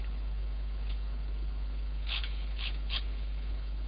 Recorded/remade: remade